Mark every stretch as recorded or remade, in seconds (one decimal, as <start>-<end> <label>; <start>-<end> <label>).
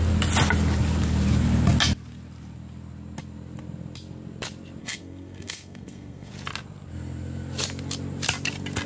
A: 0.0-4.8 recorded; 4.8-6.3 remade; 6.3-8.9 recorded